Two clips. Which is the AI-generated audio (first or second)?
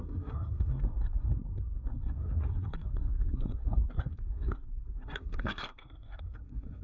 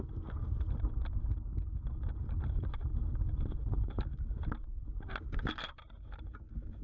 first